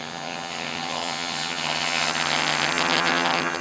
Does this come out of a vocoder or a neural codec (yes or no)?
yes